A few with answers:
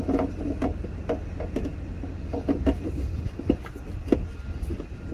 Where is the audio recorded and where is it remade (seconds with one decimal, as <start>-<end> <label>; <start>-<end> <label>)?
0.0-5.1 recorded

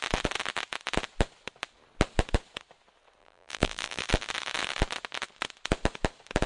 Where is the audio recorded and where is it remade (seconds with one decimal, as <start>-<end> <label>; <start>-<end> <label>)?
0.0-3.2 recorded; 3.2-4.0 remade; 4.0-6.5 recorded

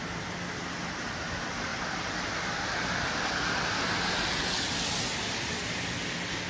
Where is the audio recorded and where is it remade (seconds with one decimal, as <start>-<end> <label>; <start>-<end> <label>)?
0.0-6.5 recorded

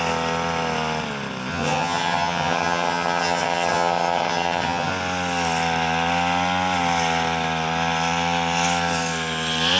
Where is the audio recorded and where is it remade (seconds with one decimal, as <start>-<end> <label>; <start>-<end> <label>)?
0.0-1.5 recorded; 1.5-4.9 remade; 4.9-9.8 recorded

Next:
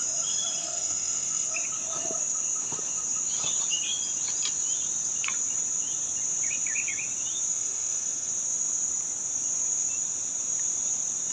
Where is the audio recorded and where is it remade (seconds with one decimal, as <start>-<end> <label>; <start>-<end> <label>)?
0.0-0.6 recorded; 0.6-1.5 remade; 1.5-7.5 recorded; 7.5-8.3 remade; 8.3-11.3 recorded

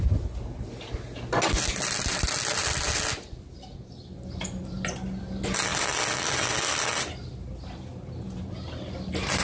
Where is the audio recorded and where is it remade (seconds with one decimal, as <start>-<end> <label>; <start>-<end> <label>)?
0.0-9.4 recorded

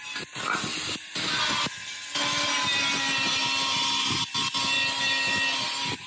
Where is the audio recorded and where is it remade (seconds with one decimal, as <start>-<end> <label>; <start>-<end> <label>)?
0.0-6.1 recorded

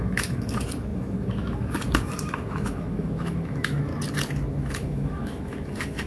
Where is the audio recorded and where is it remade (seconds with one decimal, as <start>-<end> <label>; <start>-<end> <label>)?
0.0-3.9 remade; 3.9-4.5 recorded; 4.5-6.1 remade